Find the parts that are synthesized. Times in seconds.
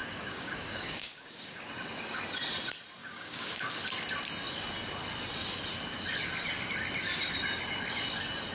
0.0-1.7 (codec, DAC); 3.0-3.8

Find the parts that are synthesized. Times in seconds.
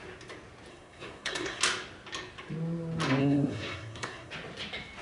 0.7-1.6 (codec, SNAC); 3.2-4.3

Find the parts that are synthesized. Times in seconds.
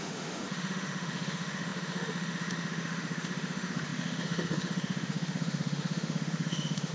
0.0-6.9 (autoencoder, DAC-VAE)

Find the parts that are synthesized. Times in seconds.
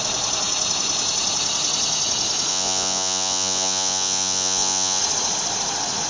2.5-5.0 (vocoder, Vocos)